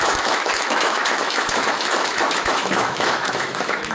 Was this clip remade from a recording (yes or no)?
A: yes